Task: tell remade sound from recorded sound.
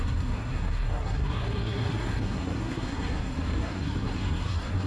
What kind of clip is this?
remade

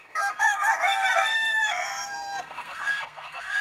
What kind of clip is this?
remade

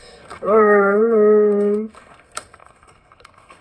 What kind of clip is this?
remade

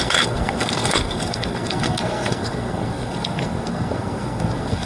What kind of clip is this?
remade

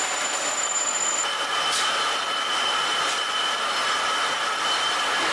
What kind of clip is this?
recorded